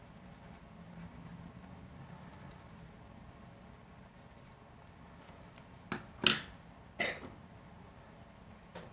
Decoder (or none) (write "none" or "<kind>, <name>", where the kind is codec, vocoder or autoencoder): none